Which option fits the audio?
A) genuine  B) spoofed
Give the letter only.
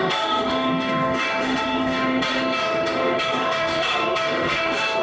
B